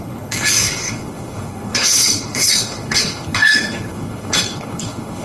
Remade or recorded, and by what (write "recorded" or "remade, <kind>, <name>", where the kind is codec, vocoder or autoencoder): remade, codec, HILCodec